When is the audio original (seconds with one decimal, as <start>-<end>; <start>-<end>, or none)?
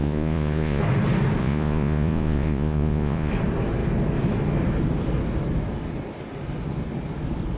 0.8-1.4; 3.3-7.6